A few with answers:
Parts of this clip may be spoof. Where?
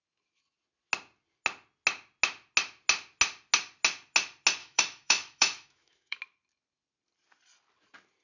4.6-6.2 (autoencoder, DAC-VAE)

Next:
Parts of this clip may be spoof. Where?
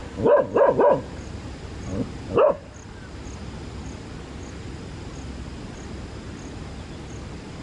none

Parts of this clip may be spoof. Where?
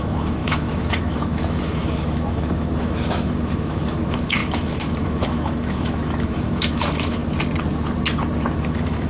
0.0-7.2 (autoencoder, DAC-VAE); 8.6-9.1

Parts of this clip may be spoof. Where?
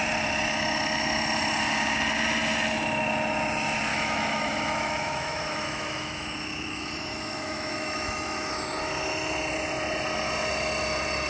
3.9-8.5 (autoencoder, DAC-VAE)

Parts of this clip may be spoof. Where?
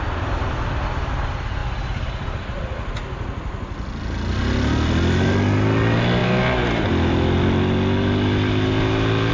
none